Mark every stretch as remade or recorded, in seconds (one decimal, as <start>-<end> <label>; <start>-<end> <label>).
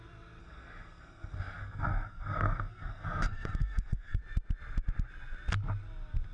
0.0-0.4 recorded; 0.4-4.2 remade; 4.2-6.3 recorded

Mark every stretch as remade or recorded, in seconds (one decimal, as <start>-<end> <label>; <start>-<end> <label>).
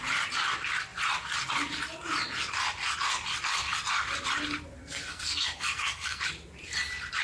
0.0-4.8 recorded; 4.8-6.2 remade; 6.2-7.2 recorded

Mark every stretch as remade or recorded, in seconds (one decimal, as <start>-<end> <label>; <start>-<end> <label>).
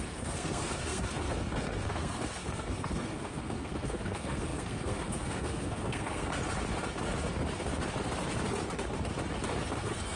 0.0-6.4 remade; 6.4-9.7 recorded; 9.7-10.2 remade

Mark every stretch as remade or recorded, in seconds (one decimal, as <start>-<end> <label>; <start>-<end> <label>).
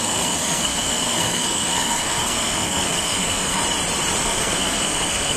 0.0-3.6 remade; 3.6-4.2 recorded; 4.2-5.4 remade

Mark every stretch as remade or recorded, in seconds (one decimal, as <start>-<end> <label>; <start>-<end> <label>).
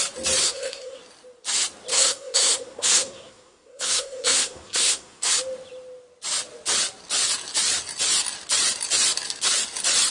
0.0-0.4 recorded; 0.4-1.0 remade; 1.0-1.9 recorded; 1.9-5.3 remade; 5.3-10.1 recorded